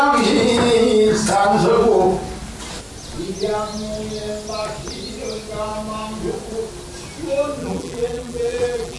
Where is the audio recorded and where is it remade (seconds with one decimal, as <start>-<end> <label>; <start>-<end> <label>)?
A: 0.0-7.6 recorded; 7.6-9.0 remade

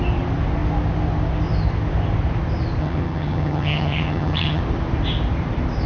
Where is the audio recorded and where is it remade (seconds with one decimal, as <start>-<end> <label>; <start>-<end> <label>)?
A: 0.0-2.8 recorded; 2.8-4.6 remade; 4.6-5.9 recorded